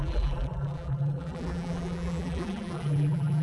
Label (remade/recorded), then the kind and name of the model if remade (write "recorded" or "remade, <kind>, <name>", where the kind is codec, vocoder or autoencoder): remade, vocoder, BigVGAN v2